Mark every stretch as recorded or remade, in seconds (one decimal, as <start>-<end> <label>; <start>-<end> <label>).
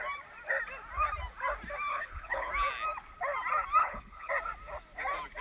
0.0-1.9 recorded; 1.9-2.5 remade; 2.5-3.8 recorded; 3.8-4.3 remade; 4.3-5.4 recorded